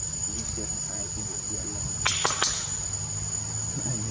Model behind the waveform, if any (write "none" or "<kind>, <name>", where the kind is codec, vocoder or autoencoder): none